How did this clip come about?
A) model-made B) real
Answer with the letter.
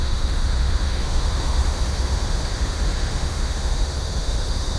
A